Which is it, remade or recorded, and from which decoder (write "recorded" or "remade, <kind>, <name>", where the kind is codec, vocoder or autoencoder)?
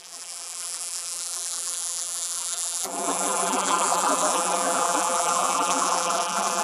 remade, vocoder, BigVGAN v2